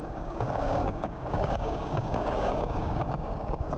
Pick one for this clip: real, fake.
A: fake